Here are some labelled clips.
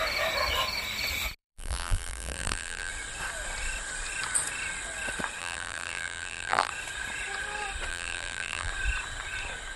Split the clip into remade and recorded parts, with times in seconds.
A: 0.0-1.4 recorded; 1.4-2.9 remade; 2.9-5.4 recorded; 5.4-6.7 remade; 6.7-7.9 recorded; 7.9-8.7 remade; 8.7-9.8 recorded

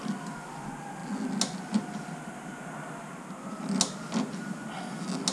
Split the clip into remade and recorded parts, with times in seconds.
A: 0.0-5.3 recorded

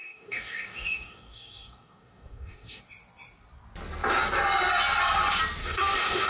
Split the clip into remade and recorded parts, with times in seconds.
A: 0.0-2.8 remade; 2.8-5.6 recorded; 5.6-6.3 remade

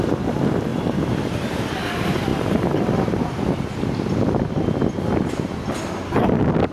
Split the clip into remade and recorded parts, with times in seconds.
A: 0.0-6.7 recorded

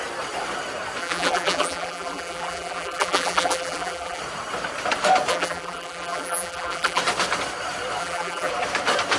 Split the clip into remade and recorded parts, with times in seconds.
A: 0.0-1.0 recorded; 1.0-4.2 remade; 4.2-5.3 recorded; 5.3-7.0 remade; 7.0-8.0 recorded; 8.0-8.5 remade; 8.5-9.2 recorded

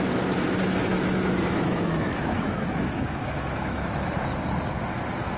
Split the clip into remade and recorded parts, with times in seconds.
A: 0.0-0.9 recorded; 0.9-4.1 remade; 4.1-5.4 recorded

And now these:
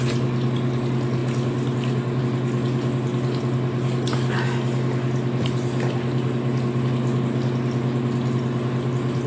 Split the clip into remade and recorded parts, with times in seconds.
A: 0.0-9.3 recorded